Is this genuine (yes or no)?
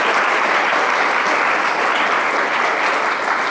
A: yes